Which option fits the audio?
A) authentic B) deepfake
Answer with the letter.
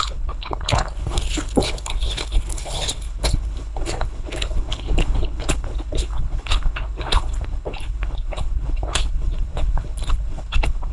B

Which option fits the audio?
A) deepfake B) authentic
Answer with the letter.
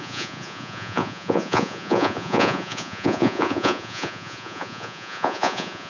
A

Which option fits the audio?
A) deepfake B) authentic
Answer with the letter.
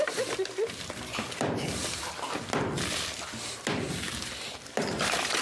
B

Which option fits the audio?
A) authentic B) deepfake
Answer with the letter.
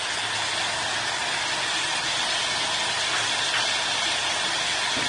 A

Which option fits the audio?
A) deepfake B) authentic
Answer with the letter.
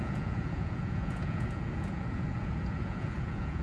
A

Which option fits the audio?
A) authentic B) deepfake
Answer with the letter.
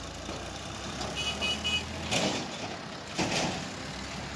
A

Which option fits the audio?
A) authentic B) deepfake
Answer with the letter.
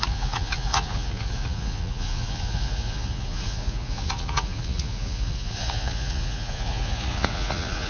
B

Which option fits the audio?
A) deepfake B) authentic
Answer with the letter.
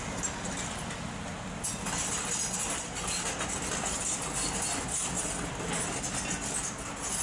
B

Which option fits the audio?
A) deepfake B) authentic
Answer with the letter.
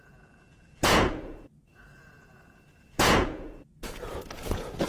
A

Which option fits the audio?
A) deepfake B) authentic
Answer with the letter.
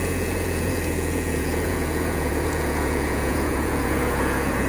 A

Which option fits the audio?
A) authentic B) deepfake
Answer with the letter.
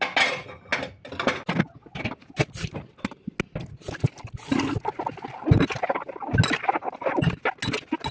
A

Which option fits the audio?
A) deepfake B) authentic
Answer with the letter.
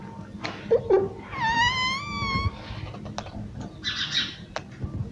B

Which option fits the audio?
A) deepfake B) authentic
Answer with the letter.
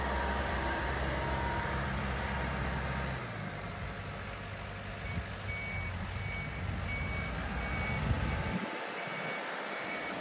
B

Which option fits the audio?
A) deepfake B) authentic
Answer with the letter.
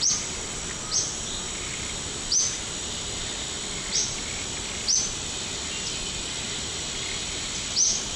B